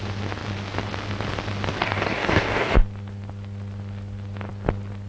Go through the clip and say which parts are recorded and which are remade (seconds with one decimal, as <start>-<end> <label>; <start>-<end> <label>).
0.0-1.8 recorded; 1.8-2.8 remade; 2.8-5.1 recorded

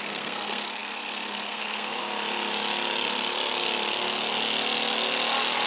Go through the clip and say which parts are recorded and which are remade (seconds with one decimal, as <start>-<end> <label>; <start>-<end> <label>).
0.0-2.0 remade; 2.0-5.7 recorded